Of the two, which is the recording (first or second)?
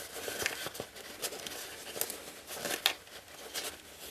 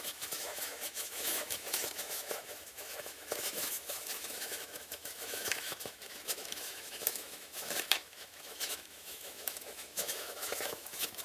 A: first